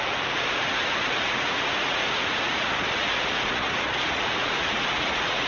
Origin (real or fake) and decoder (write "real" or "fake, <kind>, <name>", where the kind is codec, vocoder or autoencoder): fake, vocoder, Vocos